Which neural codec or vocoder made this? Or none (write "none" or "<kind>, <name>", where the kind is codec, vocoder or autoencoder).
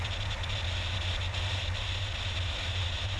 none